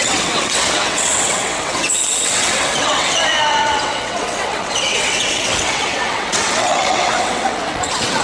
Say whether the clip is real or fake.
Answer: fake